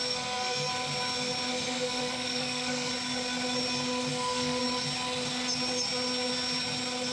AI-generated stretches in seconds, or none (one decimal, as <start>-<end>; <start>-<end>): 0.0-0.7; 1.5-2.9; 4.1-4.6